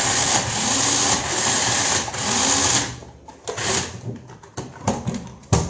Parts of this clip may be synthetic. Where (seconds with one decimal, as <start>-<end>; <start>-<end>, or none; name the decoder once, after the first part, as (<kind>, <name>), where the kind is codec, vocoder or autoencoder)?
0.0-3.0 (vocoder, BigVGAN v2); 3.8-5.7